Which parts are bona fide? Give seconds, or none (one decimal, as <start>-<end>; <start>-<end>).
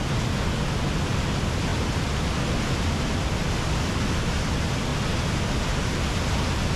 0.0-6.8